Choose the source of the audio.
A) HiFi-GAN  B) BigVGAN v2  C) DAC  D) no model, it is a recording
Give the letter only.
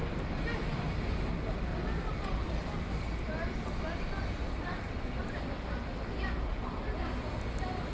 D